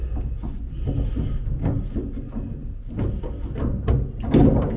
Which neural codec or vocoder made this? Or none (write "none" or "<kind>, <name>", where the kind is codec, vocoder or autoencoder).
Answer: none